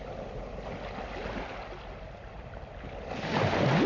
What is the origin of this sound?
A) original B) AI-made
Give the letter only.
A